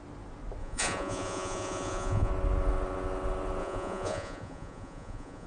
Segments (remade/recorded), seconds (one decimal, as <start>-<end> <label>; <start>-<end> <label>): 0.0-0.6 recorded; 0.6-2.3 remade; 2.3-3.6 recorded; 3.6-5.5 remade